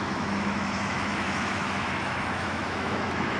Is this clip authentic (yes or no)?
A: no